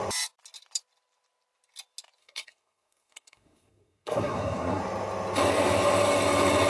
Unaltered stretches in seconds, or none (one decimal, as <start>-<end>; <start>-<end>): 0.0-2.2; 4.8-6.7